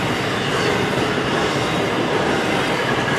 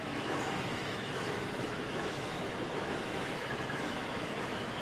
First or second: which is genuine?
first